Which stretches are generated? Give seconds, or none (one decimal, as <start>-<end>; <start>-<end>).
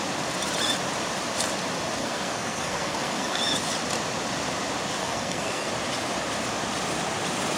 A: 2.0-3.4; 5.0-5.7